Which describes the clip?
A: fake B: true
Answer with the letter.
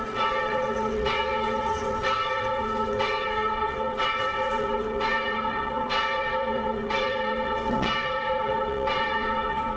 A